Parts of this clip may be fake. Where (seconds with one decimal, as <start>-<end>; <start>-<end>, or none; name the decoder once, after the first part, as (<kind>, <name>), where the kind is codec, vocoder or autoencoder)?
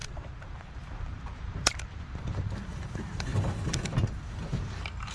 0.0-3.3 (vocoder, BigVGAN v2); 4.0-5.1